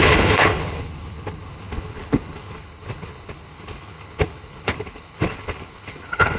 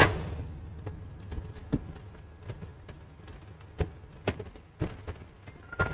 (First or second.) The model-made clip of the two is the first